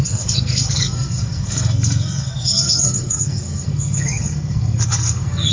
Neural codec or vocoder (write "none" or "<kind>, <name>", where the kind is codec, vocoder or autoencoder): codec, SNAC